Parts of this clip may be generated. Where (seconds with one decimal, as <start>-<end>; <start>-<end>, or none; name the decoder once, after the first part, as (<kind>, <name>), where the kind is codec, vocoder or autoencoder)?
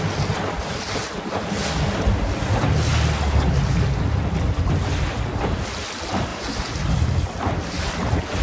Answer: none